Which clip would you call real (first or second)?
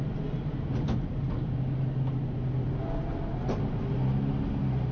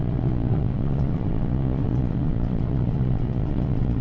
first